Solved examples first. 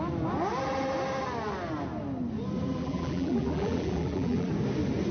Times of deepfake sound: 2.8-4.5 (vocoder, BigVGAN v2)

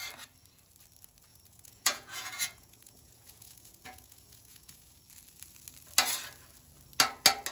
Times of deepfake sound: 1.3-5.0 (vocoder, Vocos)

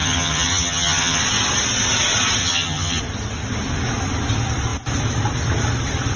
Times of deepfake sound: 0.0-1.2 (vocoder, HiFi-GAN); 2.4-3.0

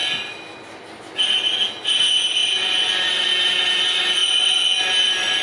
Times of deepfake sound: none

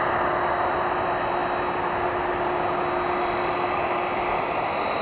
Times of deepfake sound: none

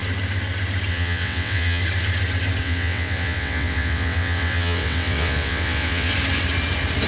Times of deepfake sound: 0.9-1.8 (vocoder, WaveNeXt); 2.6-6.1

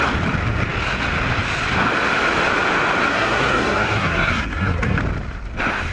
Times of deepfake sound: 3.1-5.0 (codec, SNAC)

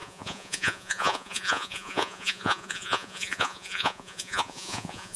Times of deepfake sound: 0.0-5.2 (vocoder, Vocos)